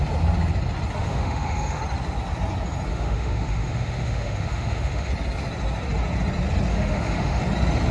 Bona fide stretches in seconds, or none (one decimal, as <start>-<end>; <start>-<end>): 0.0-1.0; 1.8-2.9; 5.1-6.7; 7.4-7.9